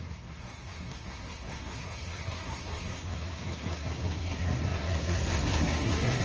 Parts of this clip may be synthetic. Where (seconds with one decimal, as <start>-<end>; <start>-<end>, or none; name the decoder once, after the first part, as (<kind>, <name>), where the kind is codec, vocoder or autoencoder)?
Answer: 0.0-6.2 (codec, SNAC)